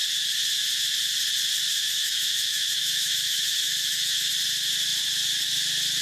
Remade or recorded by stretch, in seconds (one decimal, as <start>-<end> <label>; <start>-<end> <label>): 0.0-1.7 recorded; 1.7-4.3 remade; 4.3-6.0 recorded